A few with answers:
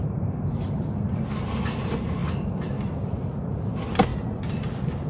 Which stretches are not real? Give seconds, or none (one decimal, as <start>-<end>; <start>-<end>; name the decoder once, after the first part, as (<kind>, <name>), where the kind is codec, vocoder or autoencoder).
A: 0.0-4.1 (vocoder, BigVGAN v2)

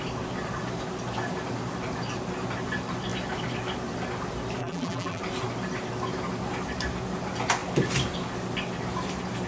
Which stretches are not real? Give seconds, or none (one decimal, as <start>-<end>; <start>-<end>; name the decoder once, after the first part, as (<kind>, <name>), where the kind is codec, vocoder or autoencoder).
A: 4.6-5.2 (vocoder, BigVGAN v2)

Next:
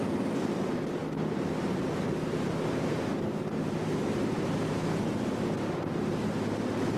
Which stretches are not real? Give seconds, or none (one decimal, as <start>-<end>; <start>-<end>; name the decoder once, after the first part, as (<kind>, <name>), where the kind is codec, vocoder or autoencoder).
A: none

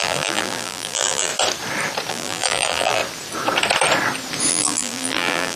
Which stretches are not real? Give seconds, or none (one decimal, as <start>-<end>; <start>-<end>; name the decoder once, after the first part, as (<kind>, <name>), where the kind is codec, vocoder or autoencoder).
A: 0.0-1.3 (vocoder, BigVGAN v2); 2.1-3.0; 4.5-5.6

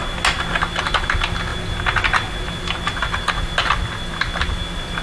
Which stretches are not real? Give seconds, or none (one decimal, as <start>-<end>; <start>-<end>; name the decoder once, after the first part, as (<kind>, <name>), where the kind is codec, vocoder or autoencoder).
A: none

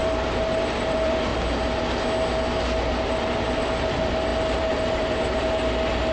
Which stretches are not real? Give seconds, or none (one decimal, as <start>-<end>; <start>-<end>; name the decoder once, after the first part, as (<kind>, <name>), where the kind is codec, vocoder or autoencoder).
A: 0.0-1.3 (vocoder, BigVGAN v2); 2.9-6.1